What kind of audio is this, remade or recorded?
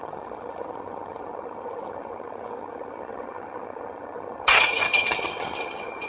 remade